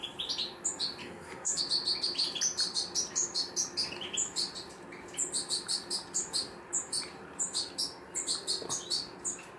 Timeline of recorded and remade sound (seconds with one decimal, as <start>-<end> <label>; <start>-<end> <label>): 0.0-1.0 recorded; 1.0-1.6 remade; 1.6-9.6 recorded